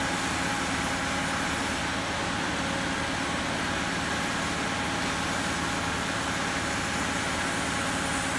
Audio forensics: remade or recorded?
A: recorded